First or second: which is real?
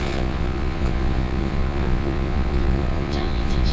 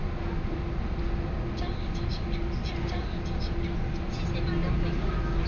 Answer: second